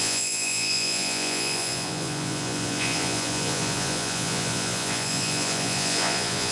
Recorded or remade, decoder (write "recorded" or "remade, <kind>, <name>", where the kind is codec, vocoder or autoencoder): remade, vocoder, Vocos